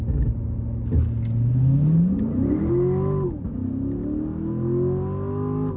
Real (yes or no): yes